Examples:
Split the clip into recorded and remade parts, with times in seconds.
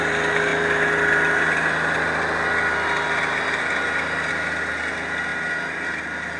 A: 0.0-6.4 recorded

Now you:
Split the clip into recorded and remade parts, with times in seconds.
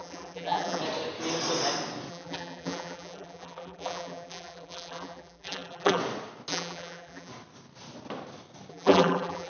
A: 0.0-0.8 remade; 0.8-2.1 recorded; 2.1-6.0 remade; 6.0-6.5 recorded; 6.5-7.3 remade; 7.3-8.7 recorded; 8.7-9.5 remade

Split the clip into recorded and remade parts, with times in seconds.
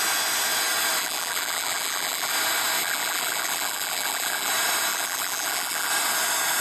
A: 0.0-1.0 recorded; 1.0-2.3 remade; 2.3-2.8 recorded; 2.8-4.5 remade; 4.5-4.9 recorded; 4.9-5.9 remade; 5.9-6.6 recorded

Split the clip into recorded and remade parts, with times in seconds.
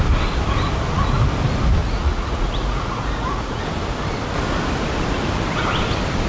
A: 0.0-1.8 recorded; 1.8-3.6 remade; 3.6-6.3 recorded